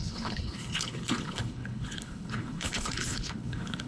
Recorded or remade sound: remade